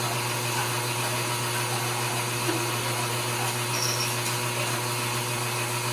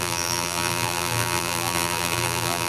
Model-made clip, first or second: second